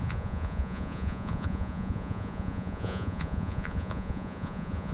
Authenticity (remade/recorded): remade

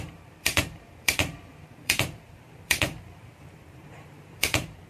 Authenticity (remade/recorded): remade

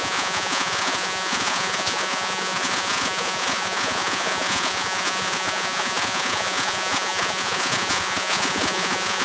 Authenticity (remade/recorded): remade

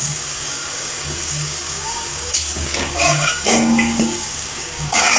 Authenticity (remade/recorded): remade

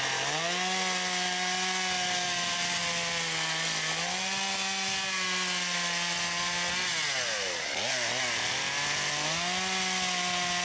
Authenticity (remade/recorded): recorded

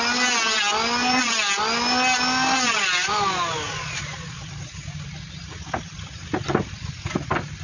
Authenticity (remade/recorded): recorded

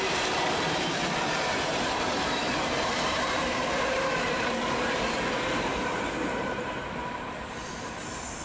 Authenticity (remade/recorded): remade